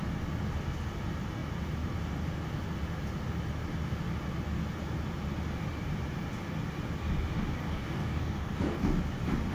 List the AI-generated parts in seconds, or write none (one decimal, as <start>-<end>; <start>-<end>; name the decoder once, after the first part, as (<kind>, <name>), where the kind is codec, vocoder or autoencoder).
7.6-9.0 (codec, DAC)